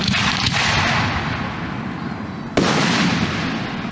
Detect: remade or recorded recorded